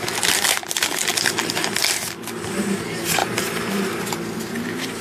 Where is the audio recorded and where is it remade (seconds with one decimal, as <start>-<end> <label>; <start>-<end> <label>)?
0.0-5.0 recorded